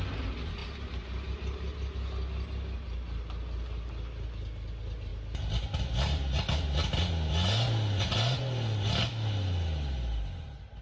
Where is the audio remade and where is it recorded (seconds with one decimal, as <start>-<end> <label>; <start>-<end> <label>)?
0.0-10.8 recorded